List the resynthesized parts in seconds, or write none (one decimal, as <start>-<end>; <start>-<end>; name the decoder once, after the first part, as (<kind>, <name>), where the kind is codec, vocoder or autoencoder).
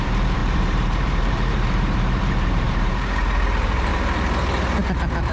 0.0-3.9 (vocoder, BigVGAN v2)